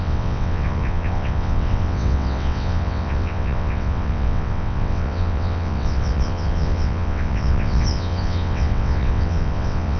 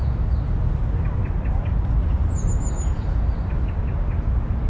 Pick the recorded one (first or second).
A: second